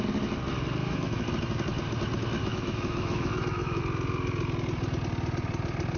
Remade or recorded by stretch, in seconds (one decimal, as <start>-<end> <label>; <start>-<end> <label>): 0.0-0.8 recorded; 0.8-1.3 remade; 1.3-2.4 recorded; 2.4-3.8 remade; 3.8-6.0 recorded